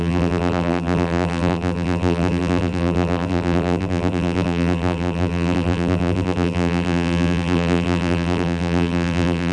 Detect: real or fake fake